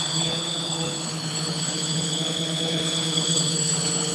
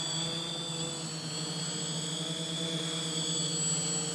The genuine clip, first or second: second